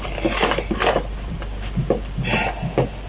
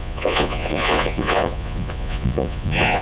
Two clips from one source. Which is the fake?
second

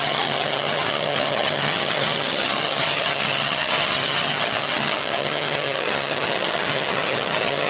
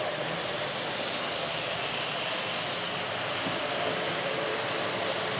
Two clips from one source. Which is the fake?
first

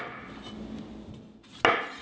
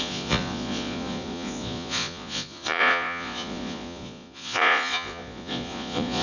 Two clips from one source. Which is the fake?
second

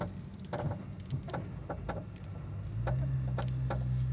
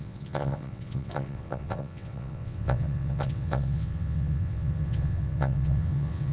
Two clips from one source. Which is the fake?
second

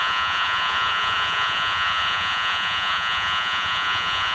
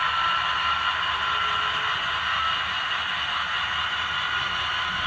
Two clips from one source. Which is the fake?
first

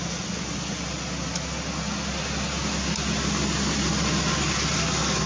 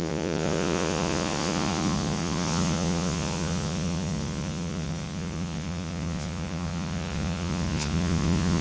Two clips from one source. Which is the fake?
second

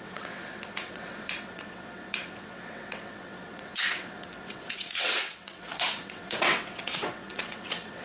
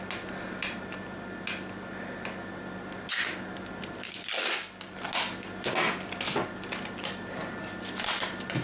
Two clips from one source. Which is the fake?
first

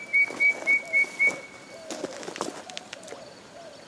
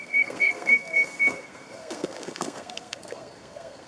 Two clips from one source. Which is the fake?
second